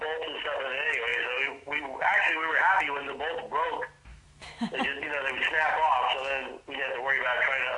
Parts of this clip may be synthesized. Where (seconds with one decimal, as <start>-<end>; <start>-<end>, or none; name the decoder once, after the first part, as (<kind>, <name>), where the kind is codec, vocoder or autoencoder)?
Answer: 1.1-2.8 (autoencoder, DAC-VAE); 4.1-4.8